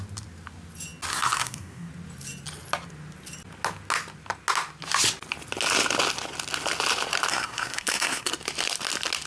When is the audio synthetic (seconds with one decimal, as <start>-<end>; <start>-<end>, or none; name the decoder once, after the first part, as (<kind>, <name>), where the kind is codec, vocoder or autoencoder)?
1.1-1.9 (codec, SNAC); 7.3-8.3